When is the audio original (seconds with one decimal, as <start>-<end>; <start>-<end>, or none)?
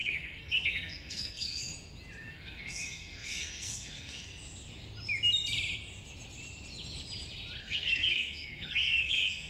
1.7-2.2; 4.3-7.6